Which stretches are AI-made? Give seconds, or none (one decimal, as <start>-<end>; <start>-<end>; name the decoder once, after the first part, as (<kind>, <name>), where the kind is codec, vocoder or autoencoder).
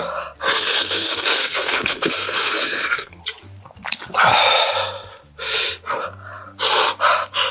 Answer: 0.5-3.2 (codec, SNAC)